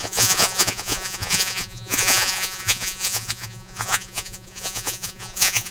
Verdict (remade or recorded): remade